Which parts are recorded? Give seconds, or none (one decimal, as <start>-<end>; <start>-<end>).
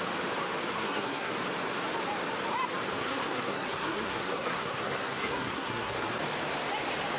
0.0-0.7; 1.3-3.0; 6.1-7.2